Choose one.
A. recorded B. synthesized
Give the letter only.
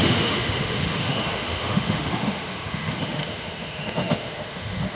B